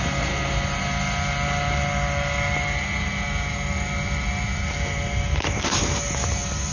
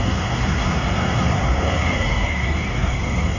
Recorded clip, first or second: first